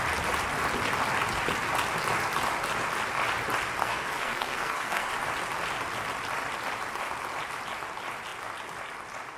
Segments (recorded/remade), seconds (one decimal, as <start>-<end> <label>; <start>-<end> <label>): 0.0-3.8 recorded; 3.8-5.1 remade; 5.1-9.4 recorded